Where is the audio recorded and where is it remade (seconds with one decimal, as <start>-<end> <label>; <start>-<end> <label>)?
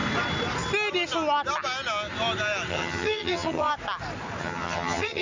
0.0-2.7 recorded; 2.7-3.7 remade; 3.7-4.4 recorded; 4.4-5.2 remade